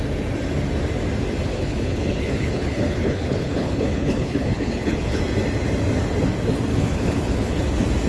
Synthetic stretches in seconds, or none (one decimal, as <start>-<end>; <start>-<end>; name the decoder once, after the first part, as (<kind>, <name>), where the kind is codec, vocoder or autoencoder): 1.5-5.2 (codec, HILCodec); 6.7-7.6